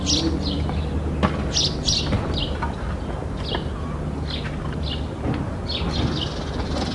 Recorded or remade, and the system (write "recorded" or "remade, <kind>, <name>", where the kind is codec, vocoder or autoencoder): recorded